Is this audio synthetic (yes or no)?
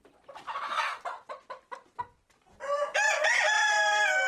no